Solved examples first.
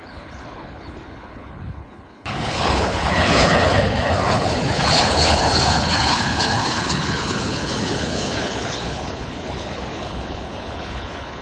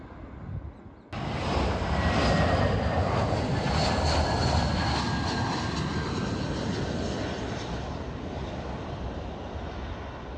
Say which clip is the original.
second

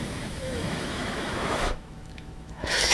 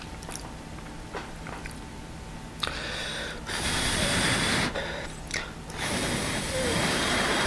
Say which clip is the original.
second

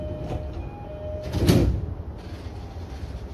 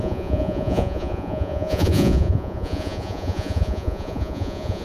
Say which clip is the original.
first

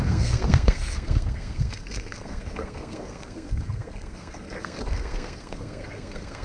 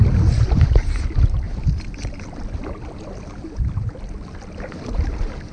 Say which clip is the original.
second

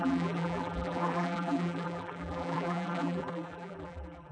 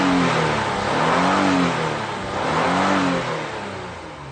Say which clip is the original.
second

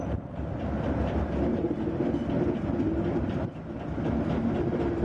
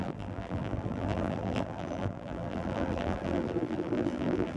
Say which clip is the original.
first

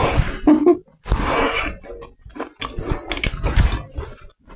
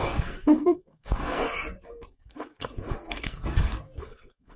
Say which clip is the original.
first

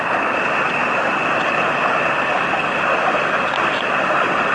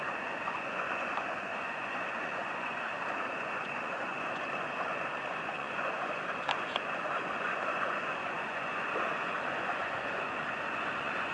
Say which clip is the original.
first